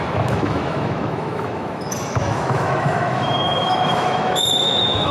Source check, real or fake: fake